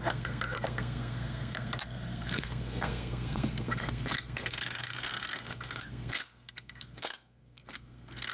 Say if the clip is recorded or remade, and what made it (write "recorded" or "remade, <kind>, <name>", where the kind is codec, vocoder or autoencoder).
remade, codec, SNAC